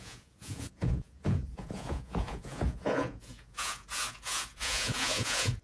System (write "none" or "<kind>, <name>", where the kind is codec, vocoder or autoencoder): vocoder, Vocos